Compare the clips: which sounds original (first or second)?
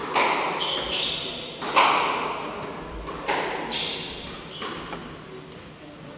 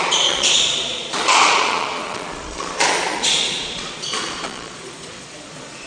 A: first